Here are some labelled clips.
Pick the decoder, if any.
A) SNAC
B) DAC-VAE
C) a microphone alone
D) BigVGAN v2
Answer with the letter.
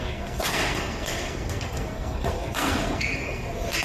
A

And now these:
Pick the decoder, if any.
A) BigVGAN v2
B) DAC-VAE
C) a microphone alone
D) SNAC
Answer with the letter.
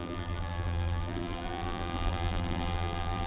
A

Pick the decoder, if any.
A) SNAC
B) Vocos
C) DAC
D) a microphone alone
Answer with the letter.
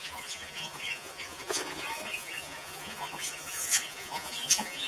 B